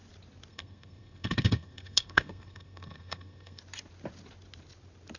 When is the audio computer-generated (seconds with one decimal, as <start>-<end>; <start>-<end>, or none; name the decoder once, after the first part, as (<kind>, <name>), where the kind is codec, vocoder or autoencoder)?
0.5-3.6 (codec, SNAC)